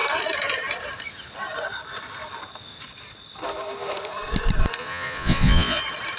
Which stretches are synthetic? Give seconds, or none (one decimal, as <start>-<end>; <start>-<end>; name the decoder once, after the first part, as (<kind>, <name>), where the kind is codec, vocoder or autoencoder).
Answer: 4.8-5.8 (vocoder, Vocos)